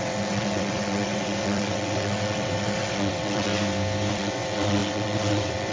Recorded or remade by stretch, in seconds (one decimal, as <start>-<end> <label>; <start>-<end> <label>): 0.0-3.5 remade; 3.5-4.1 recorded; 4.1-5.7 remade